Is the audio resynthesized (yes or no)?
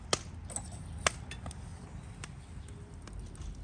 no